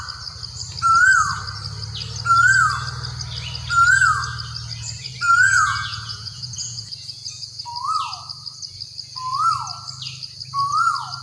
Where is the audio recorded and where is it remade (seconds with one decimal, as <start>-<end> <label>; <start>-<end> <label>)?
0.0-5.4 recorded; 5.4-7.6 remade; 7.6-11.2 recorded